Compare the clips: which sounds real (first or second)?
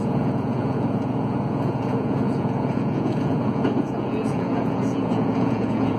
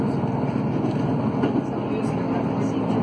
second